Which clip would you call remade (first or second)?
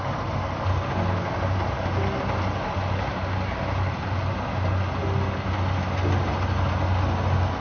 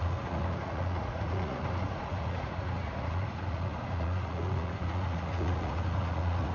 second